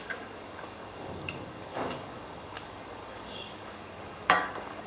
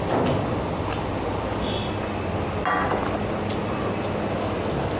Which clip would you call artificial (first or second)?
first